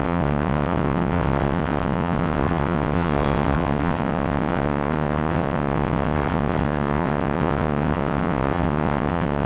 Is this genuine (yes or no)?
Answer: no